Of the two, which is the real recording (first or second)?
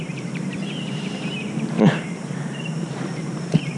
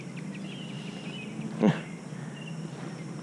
second